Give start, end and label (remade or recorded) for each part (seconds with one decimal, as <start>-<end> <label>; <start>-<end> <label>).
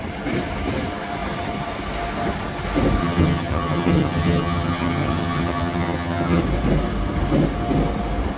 0.0-3.0 recorded; 3.0-6.4 remade; 6.4-8.4 recorded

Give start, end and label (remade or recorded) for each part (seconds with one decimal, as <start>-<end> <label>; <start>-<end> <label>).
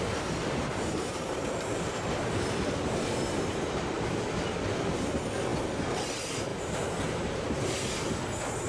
0.0-0.4 recorded; 0.4-3.9 remade; 3.9-6.5 recorded; 6.5-7.7 remade; 7.7-8.7 recorded